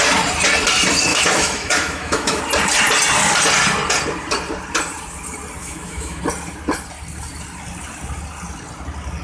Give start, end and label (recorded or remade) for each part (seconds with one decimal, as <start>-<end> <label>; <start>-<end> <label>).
0.0-1.1 recorded; 1.1-2.4 remade; 2.4-5.6 recorded; 5.6-6.2 remade; 6.2-9.2 recorded